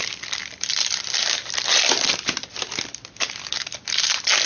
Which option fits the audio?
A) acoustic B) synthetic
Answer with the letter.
B